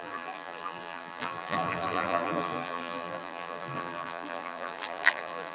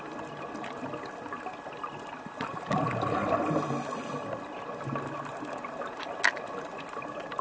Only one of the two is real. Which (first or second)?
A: second